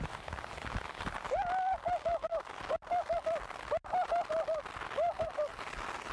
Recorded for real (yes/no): yes